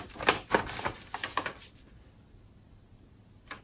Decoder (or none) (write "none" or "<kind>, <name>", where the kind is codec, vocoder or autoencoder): none